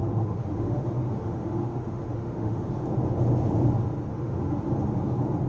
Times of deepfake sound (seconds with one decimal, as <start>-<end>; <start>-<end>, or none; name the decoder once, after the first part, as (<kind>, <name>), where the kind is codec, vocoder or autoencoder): 0.0-2.7 (autoencoder, DAC-VAE); 4.1-4.7